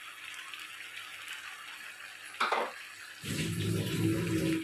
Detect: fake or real real